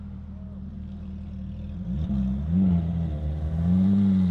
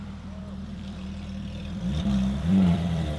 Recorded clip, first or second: first